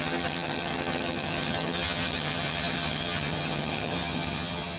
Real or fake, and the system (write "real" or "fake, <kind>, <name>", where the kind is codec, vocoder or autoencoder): fake, vocoder, HiFi-GAN